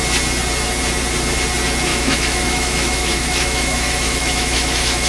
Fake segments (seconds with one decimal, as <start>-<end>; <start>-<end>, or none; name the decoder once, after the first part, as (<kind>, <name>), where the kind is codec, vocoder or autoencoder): 1.9-5.1 (autoencoder, DAC-VAE)